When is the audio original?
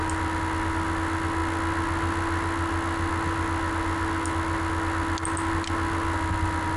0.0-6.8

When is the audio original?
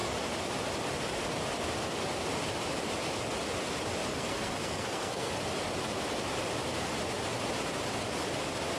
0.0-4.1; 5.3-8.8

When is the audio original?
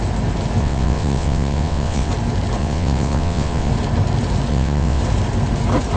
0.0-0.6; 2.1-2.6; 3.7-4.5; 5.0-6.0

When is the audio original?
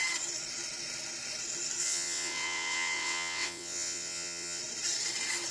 0.0-1.8; 4.6-5.5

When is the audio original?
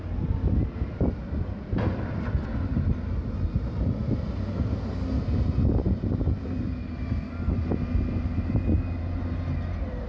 0.0-10.1